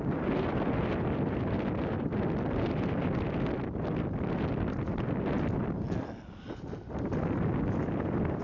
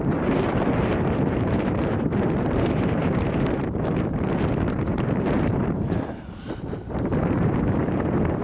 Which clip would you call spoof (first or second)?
second